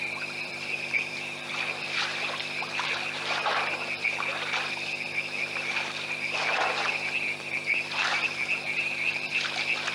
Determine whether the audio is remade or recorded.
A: remade